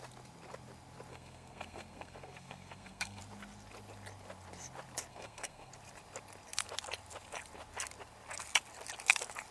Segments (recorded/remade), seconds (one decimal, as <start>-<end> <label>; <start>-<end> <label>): 0.0-1.1 recorded; 1.1-3.2 remade; 3.2-5.1 recorded; 5.1-5.7 remade; 5.7-9.5 recorded